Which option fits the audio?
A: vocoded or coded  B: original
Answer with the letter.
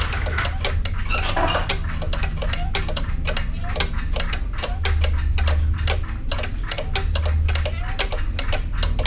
B